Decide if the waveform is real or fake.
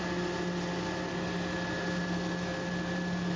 real